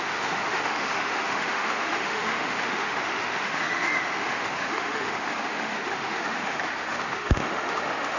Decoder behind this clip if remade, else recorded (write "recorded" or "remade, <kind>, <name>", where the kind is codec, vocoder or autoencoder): remade, autoencoder, DAC-VAE